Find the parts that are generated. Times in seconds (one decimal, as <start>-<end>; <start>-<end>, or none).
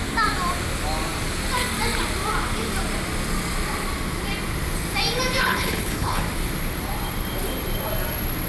5.4-6.2